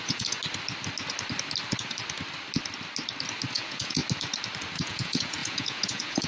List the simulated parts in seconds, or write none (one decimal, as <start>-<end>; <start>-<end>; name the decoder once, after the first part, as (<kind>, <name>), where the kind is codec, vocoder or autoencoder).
0.0-0.4 (vocoder, Vocos); 3.5-4.0; 4.8-6.3